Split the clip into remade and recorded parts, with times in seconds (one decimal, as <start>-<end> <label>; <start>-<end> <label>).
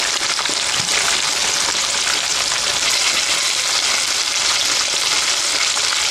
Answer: 0.0-6.1 recorded